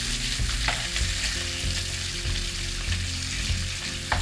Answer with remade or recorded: recorded